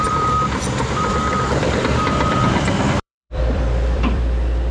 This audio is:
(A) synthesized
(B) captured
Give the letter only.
A